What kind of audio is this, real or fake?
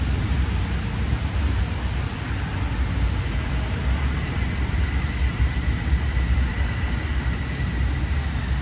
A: real